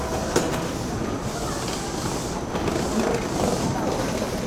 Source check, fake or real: real